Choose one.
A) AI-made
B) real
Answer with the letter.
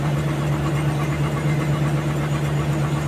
B